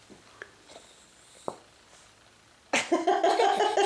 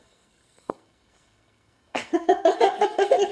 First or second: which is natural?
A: first